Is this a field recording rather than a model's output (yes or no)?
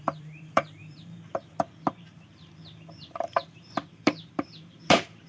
no